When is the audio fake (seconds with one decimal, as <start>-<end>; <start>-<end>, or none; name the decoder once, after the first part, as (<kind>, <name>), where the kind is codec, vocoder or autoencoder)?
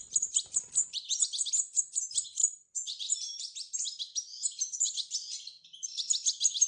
0.0-1.5 (vocoder, BigVGAN v2); 2.4-6.7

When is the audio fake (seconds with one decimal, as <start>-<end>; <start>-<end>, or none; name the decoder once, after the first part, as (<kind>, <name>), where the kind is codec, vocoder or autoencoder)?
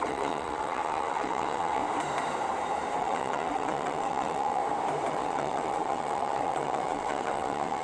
0.0-1.8 (vocoder, WaveNeXt); 3.0-4.6; 5.1-7.8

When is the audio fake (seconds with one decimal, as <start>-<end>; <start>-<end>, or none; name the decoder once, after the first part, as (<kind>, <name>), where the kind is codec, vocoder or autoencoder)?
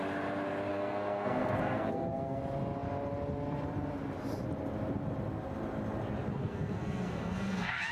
0.7-2.4 (codec, SNAC); 6.4-7.9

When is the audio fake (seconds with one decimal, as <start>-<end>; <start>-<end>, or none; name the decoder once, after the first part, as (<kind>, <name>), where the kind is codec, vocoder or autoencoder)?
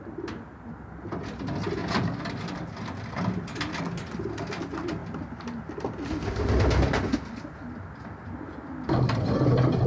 none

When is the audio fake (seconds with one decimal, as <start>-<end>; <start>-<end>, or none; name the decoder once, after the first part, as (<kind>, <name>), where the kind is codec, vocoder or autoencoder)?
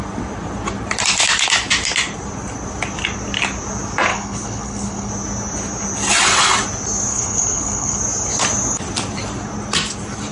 4.1-5.1 (codec, HILCodec); 7.1-8.0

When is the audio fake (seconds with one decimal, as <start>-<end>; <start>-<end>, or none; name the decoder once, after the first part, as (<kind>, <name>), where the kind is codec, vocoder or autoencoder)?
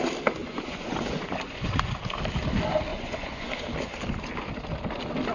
0.4-1.9 (vocoder, Vocos); 2.9-3.5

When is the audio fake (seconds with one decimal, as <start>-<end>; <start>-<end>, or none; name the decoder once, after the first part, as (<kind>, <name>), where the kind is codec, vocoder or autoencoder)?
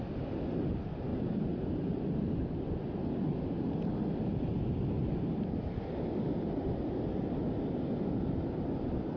none